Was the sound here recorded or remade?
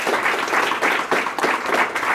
recorded